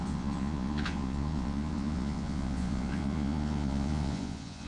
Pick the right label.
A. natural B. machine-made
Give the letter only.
B